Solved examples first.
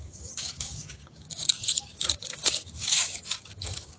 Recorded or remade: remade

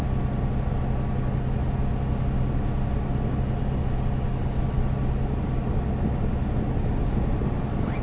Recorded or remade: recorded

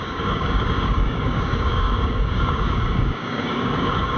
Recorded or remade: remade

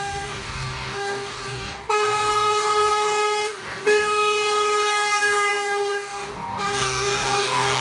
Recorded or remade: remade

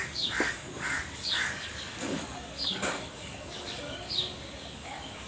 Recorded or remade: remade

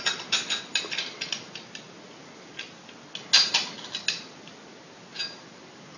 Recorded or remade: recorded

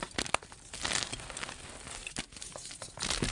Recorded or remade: recorded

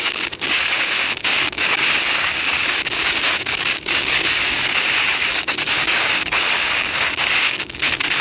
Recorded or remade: remade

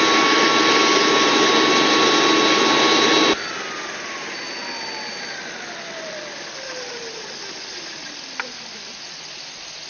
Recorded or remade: recorded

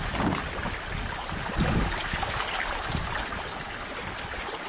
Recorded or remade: recorded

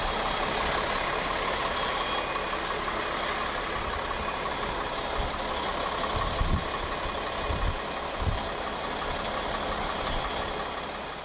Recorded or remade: recorded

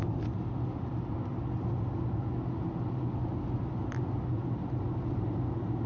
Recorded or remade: recorded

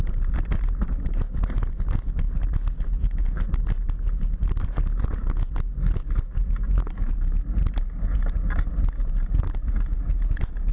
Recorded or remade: recorded